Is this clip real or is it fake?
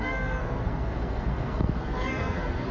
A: fake